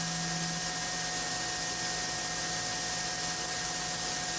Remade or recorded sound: recorded